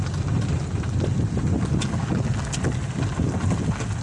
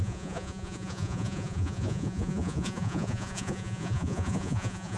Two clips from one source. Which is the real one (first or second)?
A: first